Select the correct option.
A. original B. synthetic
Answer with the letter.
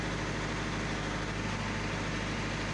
A